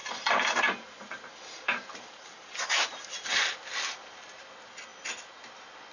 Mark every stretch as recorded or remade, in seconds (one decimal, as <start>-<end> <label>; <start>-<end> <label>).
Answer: 0.0-3.5 remade; 3.5-5.9 recorded